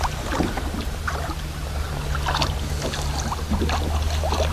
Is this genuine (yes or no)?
yes